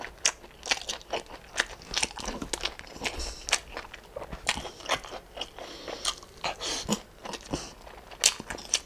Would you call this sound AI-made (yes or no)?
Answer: no